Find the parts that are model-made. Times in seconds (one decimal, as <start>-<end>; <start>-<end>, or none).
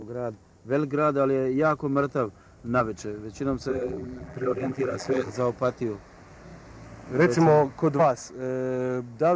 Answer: 3.7-5.3